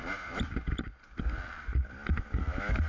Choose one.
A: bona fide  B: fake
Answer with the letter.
A